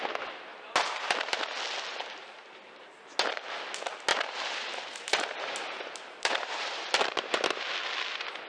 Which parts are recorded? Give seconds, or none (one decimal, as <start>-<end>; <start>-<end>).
0.0-4.1; 7.6-8.5